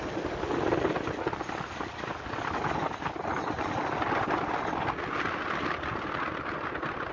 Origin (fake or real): real